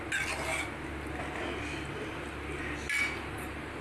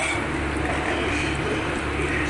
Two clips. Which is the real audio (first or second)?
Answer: first